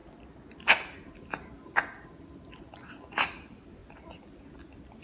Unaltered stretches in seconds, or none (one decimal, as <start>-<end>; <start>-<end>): 0.0-3.0; 3.8-5.0